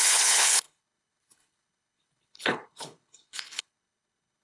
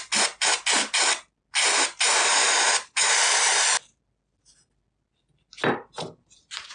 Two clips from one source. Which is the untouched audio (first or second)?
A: second